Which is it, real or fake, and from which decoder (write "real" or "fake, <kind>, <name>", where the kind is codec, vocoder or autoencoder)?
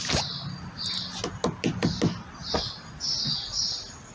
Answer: real